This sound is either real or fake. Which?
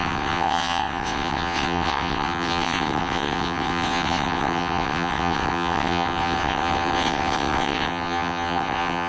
fake